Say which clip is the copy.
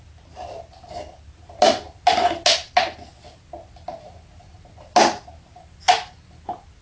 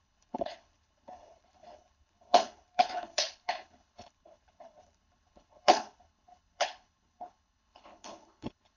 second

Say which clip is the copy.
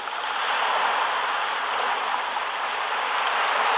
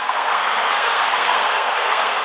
second